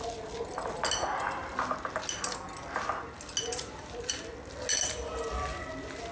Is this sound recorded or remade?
recorded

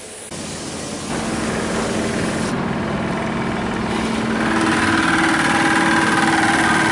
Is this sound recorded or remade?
recorded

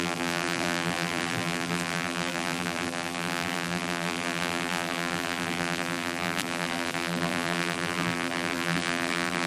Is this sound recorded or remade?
remade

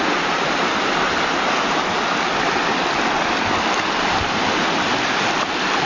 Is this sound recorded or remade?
recorded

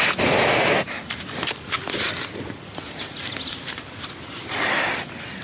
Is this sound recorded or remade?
remade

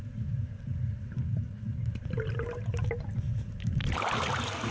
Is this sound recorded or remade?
remade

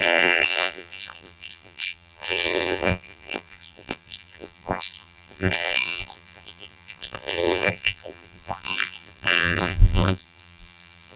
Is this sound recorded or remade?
remade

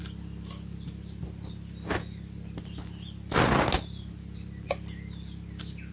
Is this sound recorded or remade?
recorded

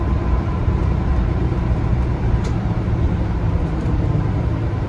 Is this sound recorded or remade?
remade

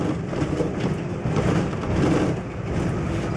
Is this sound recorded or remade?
recorded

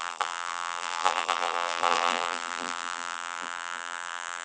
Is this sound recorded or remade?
remade